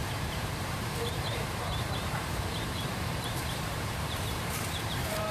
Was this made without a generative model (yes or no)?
no